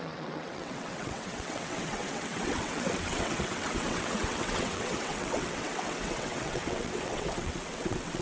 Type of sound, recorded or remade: remade